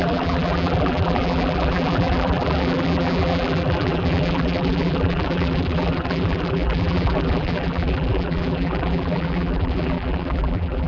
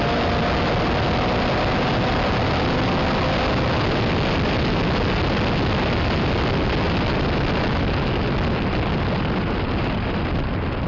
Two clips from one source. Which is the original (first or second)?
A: second